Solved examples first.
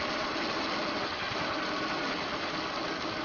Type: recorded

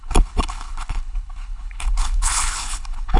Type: remade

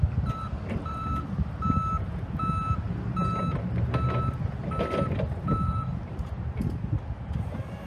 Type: recorded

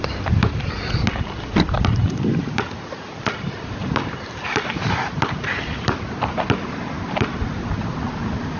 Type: recorded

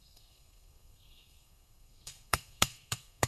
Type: remade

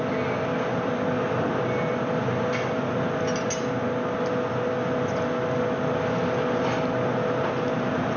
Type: recorded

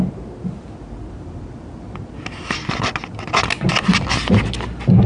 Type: recorded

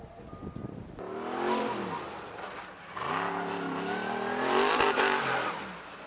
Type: recorded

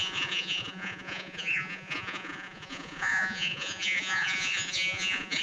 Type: remade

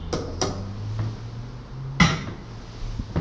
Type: recorded